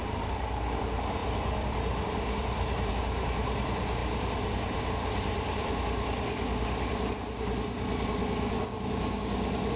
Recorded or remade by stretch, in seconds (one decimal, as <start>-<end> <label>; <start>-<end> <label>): 0.0-1.2 recorded; 1.2-2.9 remade; 2.9-4.0 recorded; 4.0-7.1 remade; 7.1-9.8 recorded